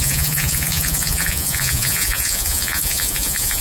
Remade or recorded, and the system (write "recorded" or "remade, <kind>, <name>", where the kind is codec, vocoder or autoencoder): remade, vocoder, Vocos